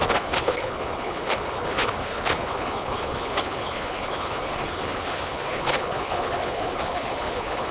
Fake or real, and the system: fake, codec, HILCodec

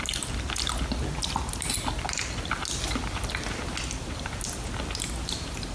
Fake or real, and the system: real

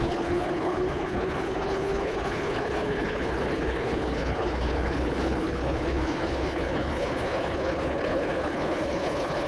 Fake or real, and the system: fake, codec, HILCodec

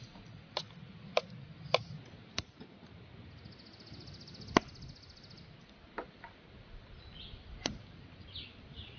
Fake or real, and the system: real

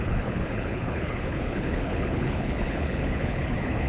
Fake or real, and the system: fake, codec, HILCodec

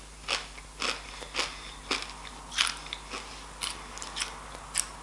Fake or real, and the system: real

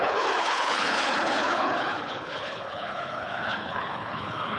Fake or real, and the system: fake, codec, HILCodec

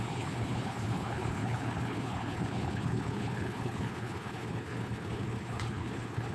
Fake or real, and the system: fake, codec, HILCodec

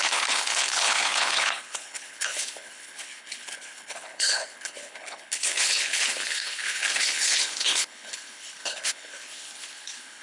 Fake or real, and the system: fake, codec, HILCodec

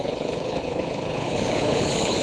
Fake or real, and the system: fake, codec, HILCodec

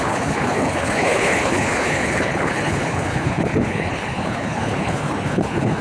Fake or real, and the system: fake, codec, HILCodec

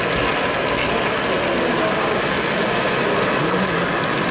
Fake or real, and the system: real